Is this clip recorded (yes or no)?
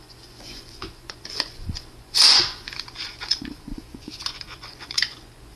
no